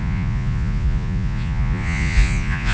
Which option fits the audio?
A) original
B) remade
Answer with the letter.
B